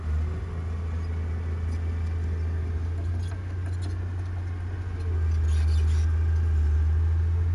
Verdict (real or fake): real